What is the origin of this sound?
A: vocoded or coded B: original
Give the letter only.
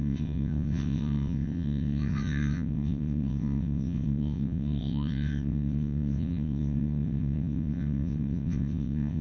A